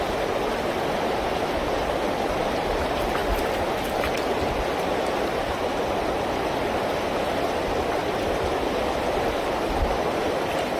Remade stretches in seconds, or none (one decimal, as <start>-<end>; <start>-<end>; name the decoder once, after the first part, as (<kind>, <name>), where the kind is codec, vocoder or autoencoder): none